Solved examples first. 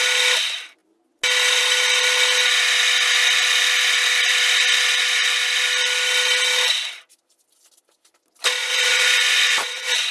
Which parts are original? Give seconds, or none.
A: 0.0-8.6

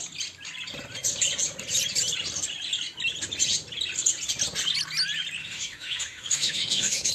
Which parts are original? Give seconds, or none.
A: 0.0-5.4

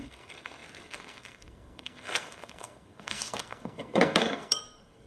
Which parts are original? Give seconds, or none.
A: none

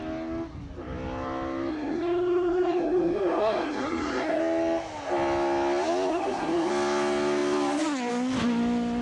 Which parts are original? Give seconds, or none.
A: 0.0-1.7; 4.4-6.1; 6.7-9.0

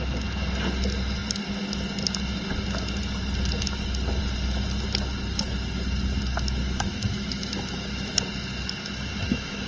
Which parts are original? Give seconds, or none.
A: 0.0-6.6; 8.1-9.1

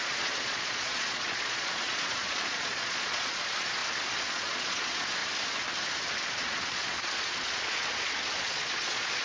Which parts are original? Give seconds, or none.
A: 3.8-4.3; 5.2-6.3; 7.9-8.4

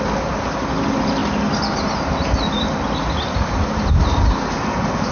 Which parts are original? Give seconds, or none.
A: 0.0-5.1